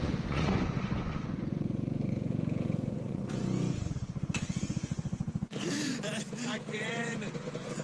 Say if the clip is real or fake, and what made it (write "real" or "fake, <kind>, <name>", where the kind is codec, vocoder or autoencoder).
fake, vocoder, Vocos